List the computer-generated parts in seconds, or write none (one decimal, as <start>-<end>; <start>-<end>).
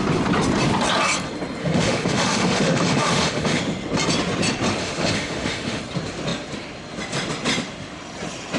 1.6-3.6; 4.8-5.8